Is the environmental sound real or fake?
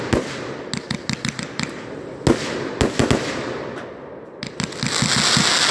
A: real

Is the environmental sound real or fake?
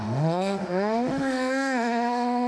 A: fake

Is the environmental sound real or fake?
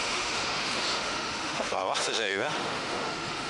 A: fake